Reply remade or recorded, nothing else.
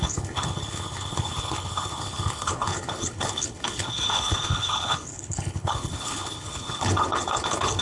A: remade